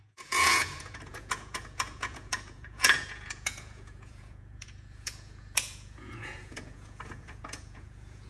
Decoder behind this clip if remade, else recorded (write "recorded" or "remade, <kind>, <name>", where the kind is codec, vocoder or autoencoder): remade, vocoder, Vocos